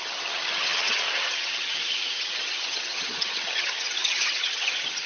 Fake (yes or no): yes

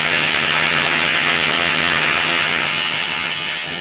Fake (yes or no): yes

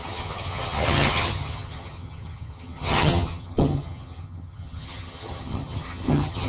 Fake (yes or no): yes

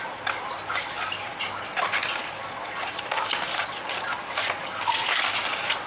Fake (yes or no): no